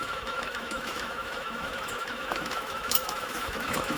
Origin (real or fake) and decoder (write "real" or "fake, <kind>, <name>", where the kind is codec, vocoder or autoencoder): fake, autoencoder, DAC-VAE